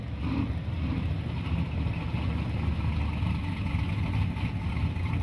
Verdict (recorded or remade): recorded